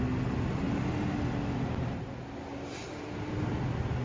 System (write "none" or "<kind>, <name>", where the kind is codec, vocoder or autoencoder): none